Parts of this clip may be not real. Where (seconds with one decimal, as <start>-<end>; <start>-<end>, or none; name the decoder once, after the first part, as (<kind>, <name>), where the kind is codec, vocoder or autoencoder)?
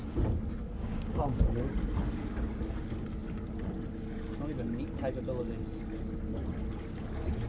0.8-1.4 (codec, DAC)